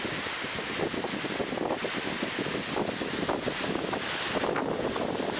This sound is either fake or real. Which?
real